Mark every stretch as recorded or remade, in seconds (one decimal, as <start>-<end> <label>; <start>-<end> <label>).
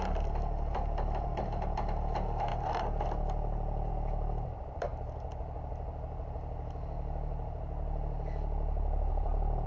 0.0-4.9 remade; 4.9-9.1 recorded; 9.1-9.7 remade